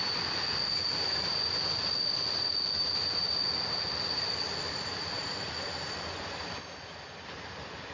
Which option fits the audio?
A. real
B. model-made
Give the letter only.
A